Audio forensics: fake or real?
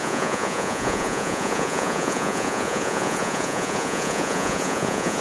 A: fake